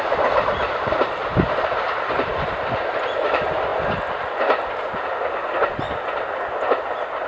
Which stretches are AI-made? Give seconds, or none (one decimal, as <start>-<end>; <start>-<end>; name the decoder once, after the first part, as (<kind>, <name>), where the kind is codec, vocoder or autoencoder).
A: 1.2-2.9 (vocoder, BigVGAN v2)